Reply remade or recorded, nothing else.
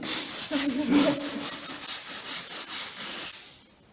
recorded